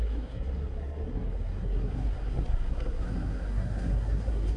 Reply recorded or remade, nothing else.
remade